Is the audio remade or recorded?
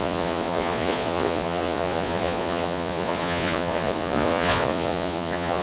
remade